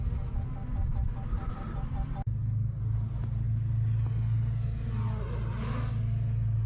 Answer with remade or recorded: recorded